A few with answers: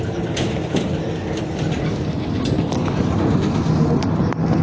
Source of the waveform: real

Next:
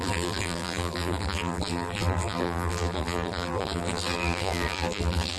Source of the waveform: fake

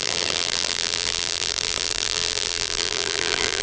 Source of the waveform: fake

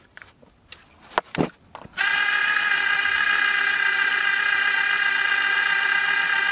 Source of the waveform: real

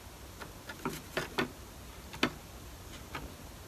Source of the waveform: real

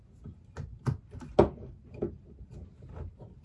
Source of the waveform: real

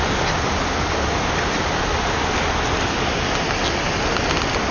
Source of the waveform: real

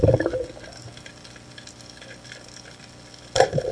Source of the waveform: real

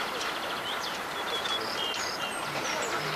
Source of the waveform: real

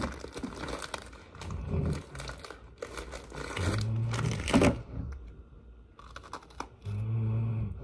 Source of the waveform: real